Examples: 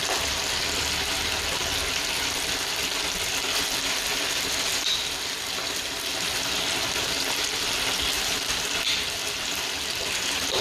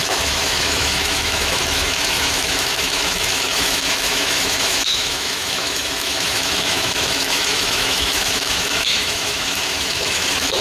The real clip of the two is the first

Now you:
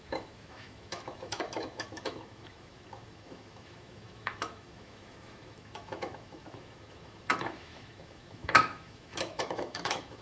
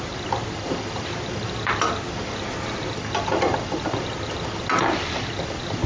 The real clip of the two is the second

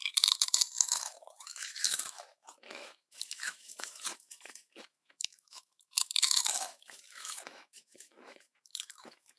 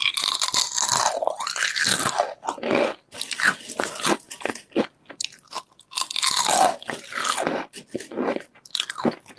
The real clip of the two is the second